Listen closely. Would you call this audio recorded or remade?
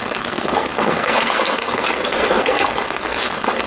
remade